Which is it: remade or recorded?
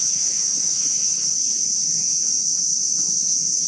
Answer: remade